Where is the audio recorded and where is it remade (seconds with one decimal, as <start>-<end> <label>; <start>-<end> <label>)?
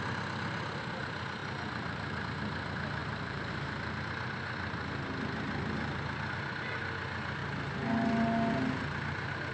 0.0-1.4 recorded; 1.4-2.2 remade; 2.2-3.0 recorded; 3.0-3.5 remade; 3.5-9.5 recorded